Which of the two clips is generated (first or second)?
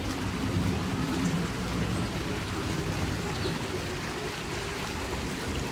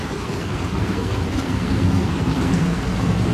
second